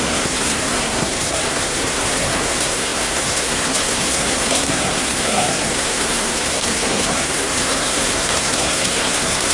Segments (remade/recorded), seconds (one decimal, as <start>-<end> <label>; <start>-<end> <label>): 0.0-9.5 remade

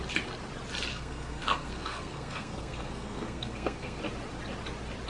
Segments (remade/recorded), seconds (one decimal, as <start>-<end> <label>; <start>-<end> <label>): 0.0-0.9 recorded; 0.9-4.0 remade; 4.0-5.1 recorded

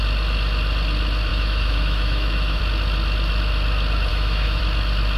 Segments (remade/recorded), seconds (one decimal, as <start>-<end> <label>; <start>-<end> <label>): 0.0-1.3 recorded; 1.3-2.6 remade; 2.6-4.1 recorded; 4.1-4.6 remade; 4.6-5.2 recorded

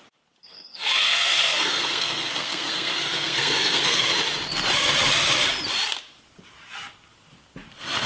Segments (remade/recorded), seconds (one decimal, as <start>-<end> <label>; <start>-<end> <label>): 0.0-0.4 recorded; 0.4-4.0 remade; 4.0-8.1 recorded

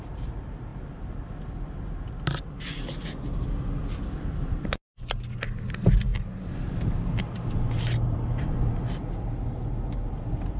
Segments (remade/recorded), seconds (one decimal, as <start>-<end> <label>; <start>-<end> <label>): 0.0-10.6 recorded

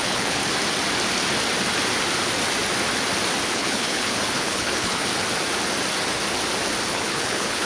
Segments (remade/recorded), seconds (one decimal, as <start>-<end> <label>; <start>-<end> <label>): 0.0-0.4 remade; 0.4-3.5 recorded; 3.5-5.1 remade; 5.1-6.9 recorded; 6.9-7.7 remade

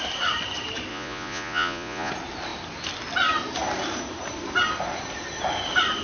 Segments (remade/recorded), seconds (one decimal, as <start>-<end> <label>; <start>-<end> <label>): 0.0-0.9 recorded; 0.9-2.1 remade; 2.1-6.0 recorded

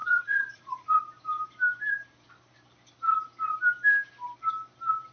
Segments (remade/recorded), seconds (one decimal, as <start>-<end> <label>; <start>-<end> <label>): 0.0-1.0 remade; 1.0-5.1 recorded